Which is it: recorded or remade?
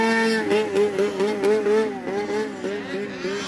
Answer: recorded